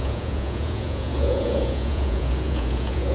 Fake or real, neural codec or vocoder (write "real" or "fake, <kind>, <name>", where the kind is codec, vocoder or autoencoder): fake, vocoder, Vocos